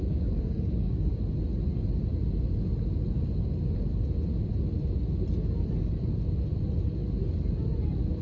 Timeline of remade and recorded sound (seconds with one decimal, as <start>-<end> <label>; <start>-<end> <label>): 0.0-1.1 remade; 1.1-8.2 recorded